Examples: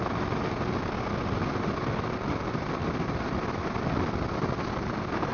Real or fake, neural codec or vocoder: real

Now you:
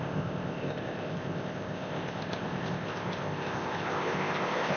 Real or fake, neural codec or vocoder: fake, codec, ZipCodec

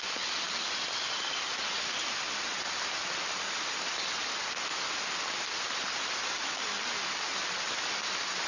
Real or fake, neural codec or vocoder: real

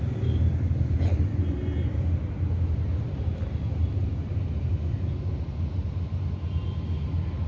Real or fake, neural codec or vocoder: real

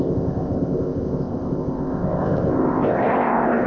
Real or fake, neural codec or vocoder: fake, codec, ZipCodec